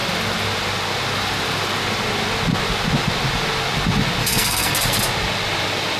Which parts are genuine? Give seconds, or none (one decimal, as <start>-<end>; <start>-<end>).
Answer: 0.0-4.2; 5.0-6.0